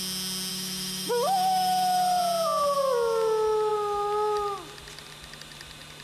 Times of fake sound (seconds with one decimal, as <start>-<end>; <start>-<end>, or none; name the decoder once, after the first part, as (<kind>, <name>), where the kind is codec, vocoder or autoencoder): 0.5-2.2 (autoencoder, DAC-VAE)